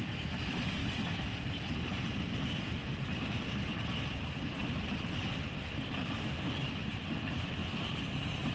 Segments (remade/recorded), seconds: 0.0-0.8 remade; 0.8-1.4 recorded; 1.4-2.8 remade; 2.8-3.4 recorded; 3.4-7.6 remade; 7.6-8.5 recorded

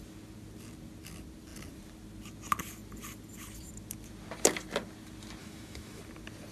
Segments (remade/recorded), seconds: 0.0-5.4 recorded; 5.4-6.0 remade; 6.0-6.5 recorded

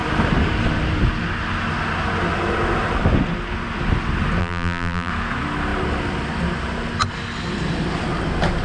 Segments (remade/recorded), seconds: 0.0-4.4 recorded; 4.4-5.1 remade; 5.1-8.6 recorded